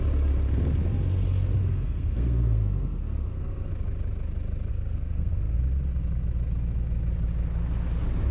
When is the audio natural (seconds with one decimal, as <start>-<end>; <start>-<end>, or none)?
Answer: 0.0-1.6; 3.7-4.7; 5.6-8.3

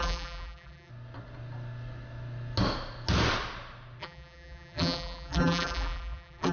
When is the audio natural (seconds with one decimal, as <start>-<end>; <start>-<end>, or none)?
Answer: 0.9-4.0

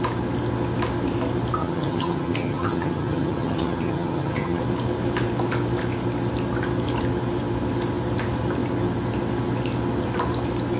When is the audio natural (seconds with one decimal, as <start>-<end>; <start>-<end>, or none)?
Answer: 0.0-1.6; 4.6-10.8

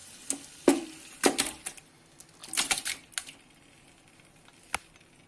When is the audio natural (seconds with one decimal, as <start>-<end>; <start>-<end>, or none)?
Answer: 0.0-5.3

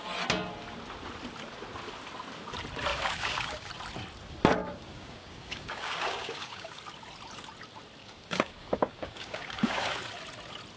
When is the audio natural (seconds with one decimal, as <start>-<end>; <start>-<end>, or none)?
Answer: 0.0-2.9; 3.7-4.6; 6.8-8.0; 10.0-10.8

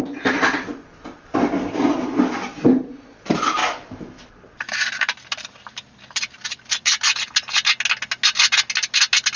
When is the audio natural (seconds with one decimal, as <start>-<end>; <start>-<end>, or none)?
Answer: 0.0-3.6; 4.3-9.4

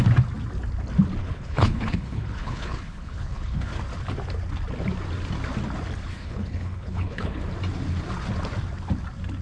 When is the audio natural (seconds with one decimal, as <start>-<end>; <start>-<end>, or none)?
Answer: 0.0-1.2; 3.7-6.1; 7.4-9.4